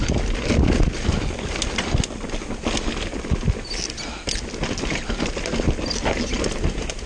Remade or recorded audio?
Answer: recorded